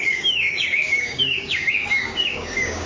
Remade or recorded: remade